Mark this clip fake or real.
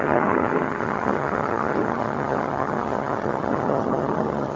fake